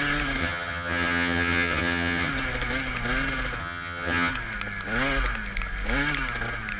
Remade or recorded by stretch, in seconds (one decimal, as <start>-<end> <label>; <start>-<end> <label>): 0.0-0.4 recorded; 0.4-2.3 remade; 2.3-3.6 recorded; 3.6-4.3 remade; 4.3-6.8 recorded